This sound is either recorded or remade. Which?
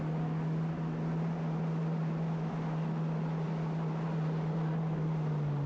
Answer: recorded